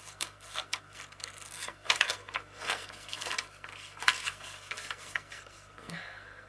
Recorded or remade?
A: remade